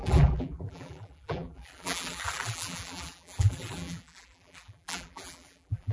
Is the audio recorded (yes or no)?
no